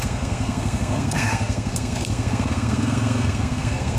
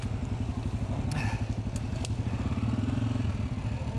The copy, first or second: first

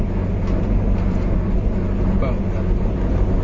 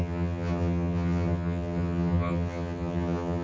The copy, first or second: second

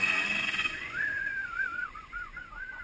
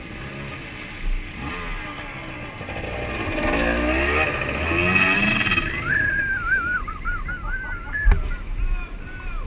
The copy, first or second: first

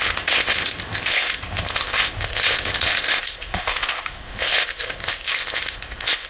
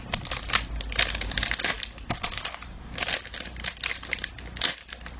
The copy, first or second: first